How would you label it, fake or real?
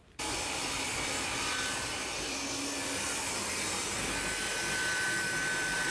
fake